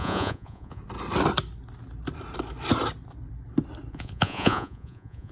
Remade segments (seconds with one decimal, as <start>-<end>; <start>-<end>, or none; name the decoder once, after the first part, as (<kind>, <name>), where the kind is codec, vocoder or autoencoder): 0.0-0.8 (vocoder, Vocos); 3.9-5.3